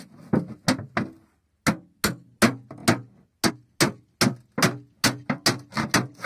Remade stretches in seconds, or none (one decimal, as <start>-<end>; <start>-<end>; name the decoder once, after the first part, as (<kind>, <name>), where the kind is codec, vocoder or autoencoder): none